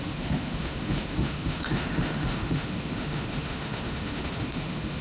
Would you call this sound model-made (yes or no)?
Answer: yes